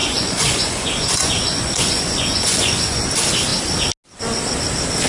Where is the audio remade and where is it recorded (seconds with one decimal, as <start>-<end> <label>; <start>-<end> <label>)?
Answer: 0.0-3.1 remade; 3.1-5.1 recorded